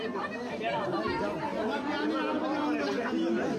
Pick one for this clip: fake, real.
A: real